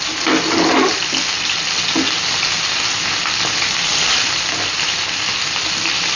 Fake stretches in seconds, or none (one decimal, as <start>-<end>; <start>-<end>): none